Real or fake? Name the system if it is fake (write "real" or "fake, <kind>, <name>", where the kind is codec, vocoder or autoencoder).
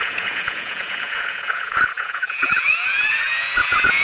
fake, vocoder, Vocos